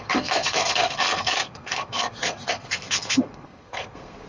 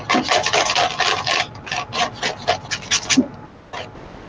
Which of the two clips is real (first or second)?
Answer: second